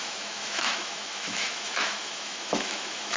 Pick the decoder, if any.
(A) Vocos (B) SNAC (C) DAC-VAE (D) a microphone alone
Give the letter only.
C